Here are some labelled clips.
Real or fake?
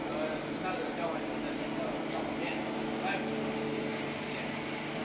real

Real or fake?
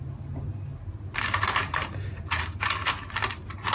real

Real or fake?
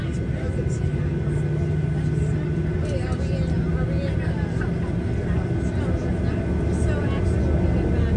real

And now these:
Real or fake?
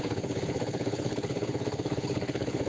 fake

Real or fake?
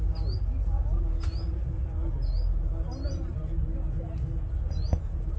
real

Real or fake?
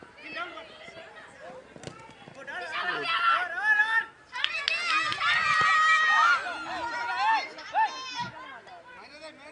real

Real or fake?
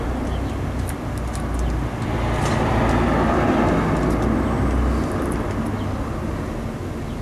real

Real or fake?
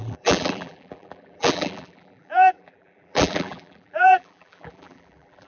fake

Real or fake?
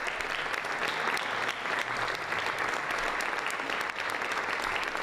real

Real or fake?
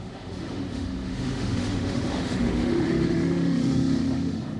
fake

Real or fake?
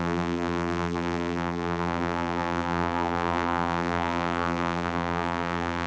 fake